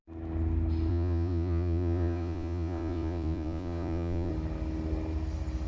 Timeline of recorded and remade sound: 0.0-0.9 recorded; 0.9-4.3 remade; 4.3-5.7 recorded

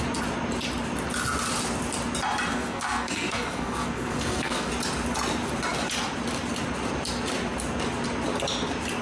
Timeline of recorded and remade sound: 0.0-2.5 recorded; 2.5-4.7 remade; 4.7-9.0 recorded

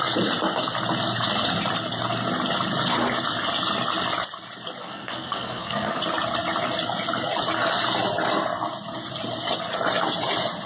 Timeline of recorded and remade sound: 0.0-4.8 recorded; 4.8-6.0 remade; 6.0-10.7 recorded

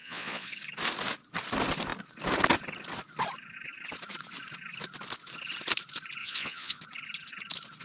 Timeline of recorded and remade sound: 0.0-0.5 remade; 0.5-6.2 recorded; 6.2-6.8 remade; 6.8-7.8 recorded